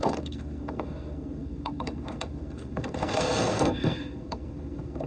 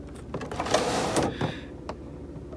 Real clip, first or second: second